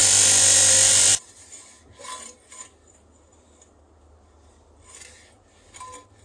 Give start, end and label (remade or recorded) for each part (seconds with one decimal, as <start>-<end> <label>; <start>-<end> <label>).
0.0-6.2 recorded